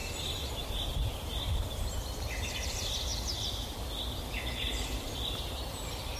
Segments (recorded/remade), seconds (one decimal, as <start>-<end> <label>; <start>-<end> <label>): 0.0-6.2 recorded